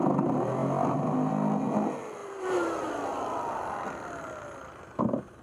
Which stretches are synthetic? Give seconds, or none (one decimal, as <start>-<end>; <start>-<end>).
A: 2.2-2.9